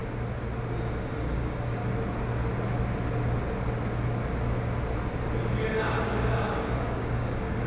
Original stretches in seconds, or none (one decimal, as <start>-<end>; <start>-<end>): 0.0-1.0; 1.8-6.0

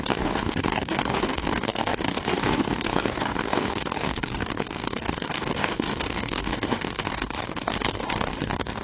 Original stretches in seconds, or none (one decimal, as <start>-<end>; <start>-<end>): none

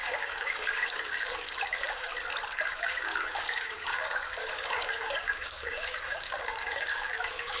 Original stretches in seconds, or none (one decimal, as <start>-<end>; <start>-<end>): 2.1-2.7

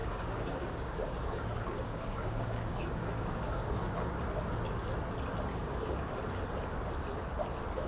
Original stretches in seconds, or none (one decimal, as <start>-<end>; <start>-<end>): 3.9-5.5; 6.2-7.9

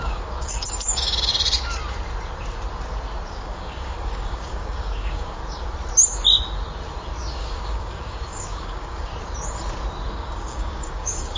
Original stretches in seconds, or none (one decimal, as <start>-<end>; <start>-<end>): 1.3-3.3; 5.4-7.3; 9.1-10.1